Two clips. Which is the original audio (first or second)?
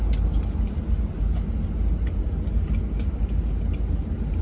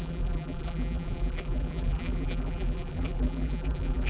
first